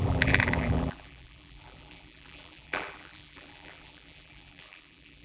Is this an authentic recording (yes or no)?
no